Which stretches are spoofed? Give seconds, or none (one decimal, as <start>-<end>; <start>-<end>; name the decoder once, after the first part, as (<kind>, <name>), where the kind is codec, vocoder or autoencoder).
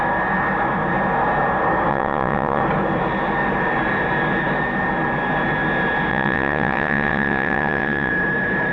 1.9-2.6 (vocoder, WaveNeXt); 6.1-8.1